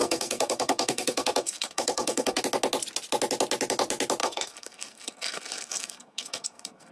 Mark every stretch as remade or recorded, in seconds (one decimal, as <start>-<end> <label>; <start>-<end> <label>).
0.0-2.4 remade; 2.4-4.2 recorded; 4.2-6.9 remade